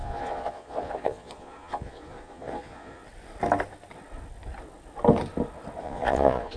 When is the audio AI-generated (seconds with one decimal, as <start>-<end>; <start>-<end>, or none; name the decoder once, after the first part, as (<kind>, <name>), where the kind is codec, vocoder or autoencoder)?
0.0-3.0 (vocoder, Vocos); 5.8-6.6